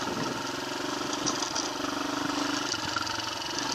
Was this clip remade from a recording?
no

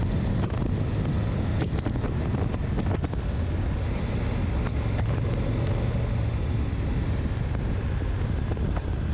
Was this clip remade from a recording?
no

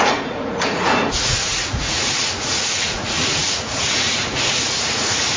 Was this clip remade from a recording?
yes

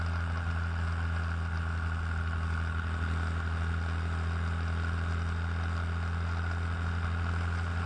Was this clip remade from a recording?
no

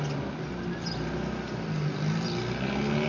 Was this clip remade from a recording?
no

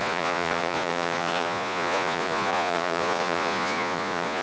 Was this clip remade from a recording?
yes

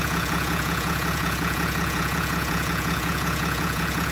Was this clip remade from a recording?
yes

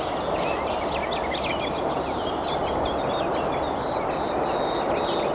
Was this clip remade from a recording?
no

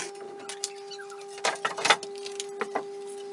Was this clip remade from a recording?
no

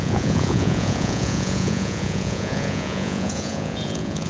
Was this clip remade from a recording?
yes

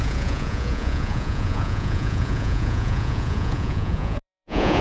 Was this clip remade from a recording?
yes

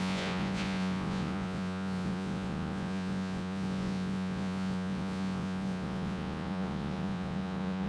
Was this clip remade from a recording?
yes